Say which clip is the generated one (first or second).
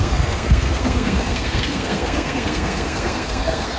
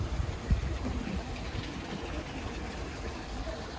first